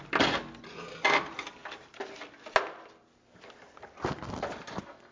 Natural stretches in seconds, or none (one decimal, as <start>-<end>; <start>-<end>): 0.0-5.1